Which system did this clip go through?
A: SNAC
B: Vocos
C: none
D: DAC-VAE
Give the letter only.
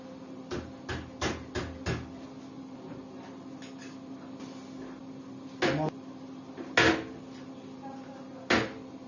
C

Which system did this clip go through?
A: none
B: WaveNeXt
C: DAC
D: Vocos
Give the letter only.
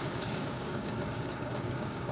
C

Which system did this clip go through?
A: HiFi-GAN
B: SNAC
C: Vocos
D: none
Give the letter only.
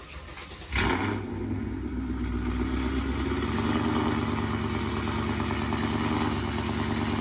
D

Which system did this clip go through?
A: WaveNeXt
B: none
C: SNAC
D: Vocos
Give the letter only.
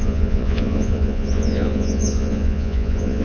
D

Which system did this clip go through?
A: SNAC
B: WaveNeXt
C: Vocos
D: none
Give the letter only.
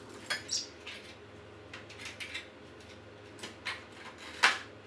D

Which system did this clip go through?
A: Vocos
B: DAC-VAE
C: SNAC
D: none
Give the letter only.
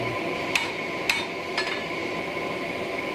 D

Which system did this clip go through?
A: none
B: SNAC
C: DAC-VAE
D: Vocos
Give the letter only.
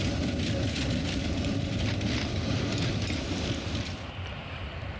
A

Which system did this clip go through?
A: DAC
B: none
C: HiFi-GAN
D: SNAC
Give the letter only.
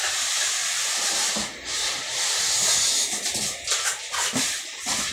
B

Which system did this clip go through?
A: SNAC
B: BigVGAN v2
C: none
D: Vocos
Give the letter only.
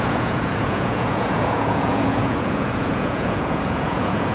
D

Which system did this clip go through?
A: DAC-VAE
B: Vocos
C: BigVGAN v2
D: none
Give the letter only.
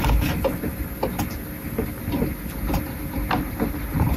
D